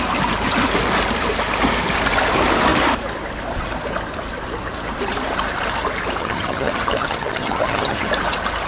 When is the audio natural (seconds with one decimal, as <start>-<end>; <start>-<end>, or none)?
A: 0.0-6.2; 8.1-8.7